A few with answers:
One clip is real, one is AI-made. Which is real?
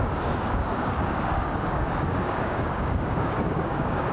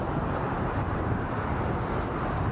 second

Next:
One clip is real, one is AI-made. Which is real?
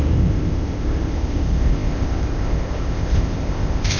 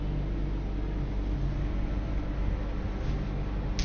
second